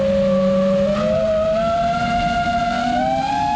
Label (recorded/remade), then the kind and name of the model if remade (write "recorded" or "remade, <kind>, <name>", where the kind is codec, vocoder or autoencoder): recorded